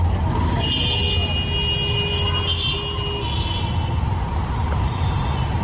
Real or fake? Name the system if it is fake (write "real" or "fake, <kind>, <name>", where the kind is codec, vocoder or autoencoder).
real